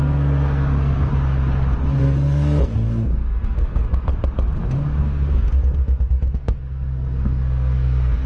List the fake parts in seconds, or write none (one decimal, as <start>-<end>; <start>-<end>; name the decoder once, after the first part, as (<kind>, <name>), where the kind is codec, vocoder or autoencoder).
0.0-1.1 (codec, SNAC); 2.0-4.1; 5.0-8.3